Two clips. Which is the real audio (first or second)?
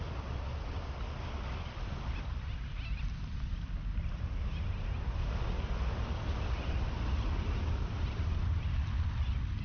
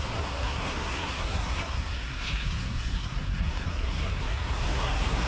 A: first